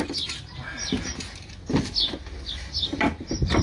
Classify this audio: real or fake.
real